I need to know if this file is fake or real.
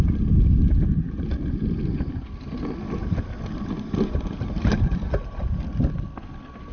real